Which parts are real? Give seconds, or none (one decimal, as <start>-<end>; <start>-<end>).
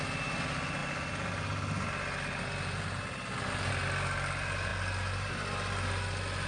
0.0-6.5